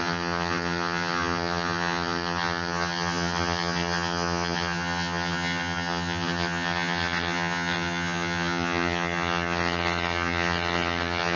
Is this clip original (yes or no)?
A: no